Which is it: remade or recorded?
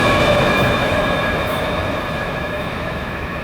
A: remade